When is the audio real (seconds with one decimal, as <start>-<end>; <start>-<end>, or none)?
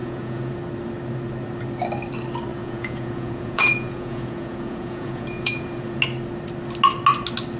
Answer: 0.5-2.5; 6.0-7.6